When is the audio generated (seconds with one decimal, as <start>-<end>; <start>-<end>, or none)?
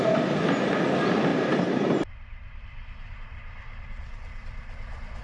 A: 1.3-2.1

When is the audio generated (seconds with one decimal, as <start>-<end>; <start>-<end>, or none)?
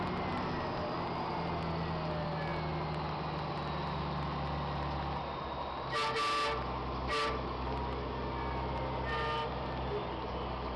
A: none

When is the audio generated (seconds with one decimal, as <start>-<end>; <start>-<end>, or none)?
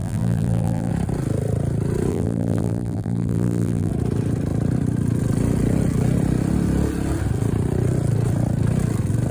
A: 0.0-0.9; 2.1-3.9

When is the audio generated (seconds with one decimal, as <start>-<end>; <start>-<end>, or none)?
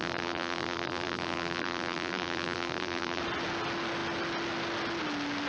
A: 0.0-3.2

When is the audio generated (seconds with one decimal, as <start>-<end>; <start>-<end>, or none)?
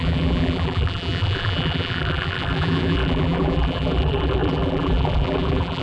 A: 0.0-5.8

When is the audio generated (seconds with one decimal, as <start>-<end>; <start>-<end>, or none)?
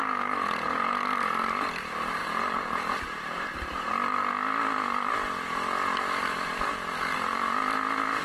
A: 2.2-3.9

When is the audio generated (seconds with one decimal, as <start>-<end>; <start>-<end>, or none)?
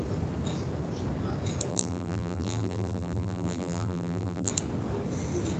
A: 1.7-4.5